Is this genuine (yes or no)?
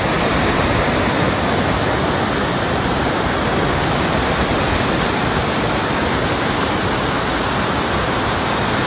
yes